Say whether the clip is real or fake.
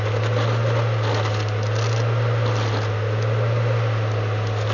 real